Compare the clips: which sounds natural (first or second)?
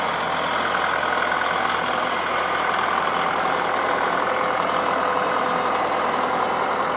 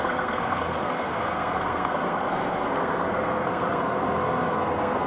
first